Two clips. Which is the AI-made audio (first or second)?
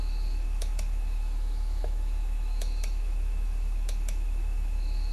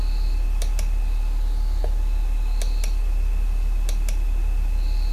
first